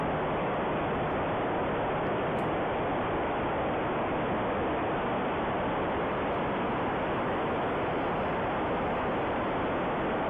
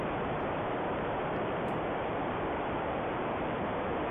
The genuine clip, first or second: first